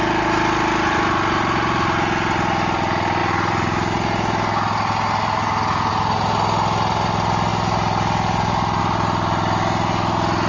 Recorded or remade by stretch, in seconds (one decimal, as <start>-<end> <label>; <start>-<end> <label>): 0.0-10.5 recorded

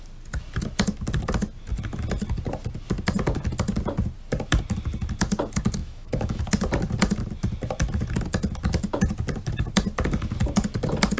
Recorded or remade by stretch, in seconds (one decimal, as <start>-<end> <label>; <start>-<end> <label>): 0.0-5.8 recorded; 5.8-6.4 remade; 6.4-11.2 recorded

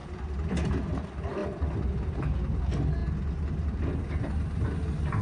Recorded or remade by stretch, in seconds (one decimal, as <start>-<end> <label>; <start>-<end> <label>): 0.0-5.2 recorded

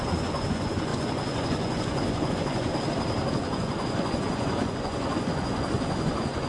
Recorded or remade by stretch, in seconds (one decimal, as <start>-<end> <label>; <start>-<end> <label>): 0.0-2.7 remade; 2.7-3.3 recorded; 3.3-6.5 remade

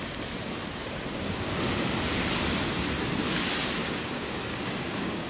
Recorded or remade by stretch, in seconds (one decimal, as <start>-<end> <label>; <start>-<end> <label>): 0.0-3.8 recorded; 3.8-5.3 remade

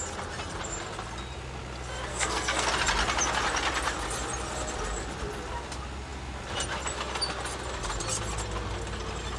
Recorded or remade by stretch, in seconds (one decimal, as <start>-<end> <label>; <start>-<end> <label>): 0.0-2.1 recorded; 2.1-2.7 remade; 2.7-9.4 recorded

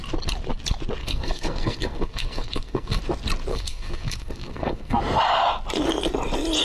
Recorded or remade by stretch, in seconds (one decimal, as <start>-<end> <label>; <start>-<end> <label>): 0.0-1.0 recorded; 1.0-3.0 remade; 3.0-3.5 recorded; 3.5-5.0 remade; 5.0-6.6 recorded

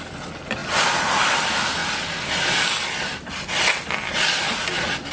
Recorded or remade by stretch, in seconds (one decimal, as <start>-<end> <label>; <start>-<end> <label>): 0.0-5.1 recorded